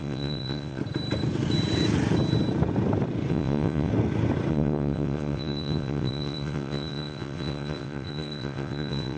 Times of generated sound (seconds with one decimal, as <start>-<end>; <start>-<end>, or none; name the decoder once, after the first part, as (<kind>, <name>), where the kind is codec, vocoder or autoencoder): 0.0-0.8 (vocoder, WaveNeXt); 3.3-3.9; 4.5-9.2